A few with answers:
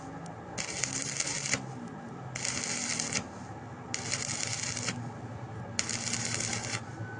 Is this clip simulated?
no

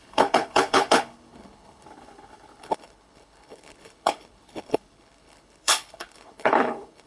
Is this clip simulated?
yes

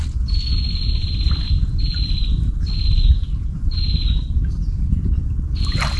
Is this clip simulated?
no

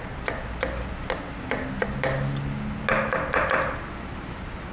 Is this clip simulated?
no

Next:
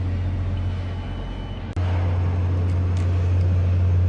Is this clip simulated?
no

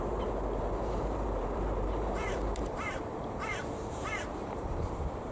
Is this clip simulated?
yes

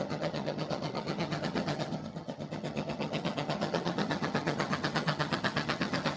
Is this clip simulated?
yes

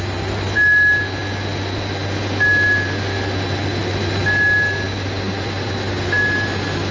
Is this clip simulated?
no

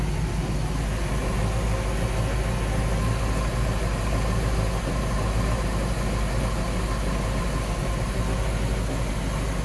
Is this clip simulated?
no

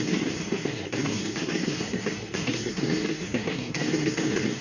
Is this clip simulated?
yes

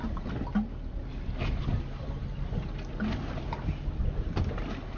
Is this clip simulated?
no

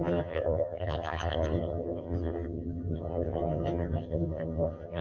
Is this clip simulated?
yes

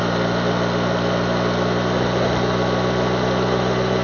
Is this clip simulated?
no